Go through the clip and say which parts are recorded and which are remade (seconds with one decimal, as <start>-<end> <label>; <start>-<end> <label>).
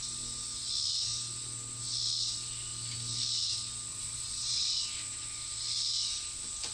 0.0-3.9 recorded; 3.9-4.9 remade; 4.9-6.7 recorded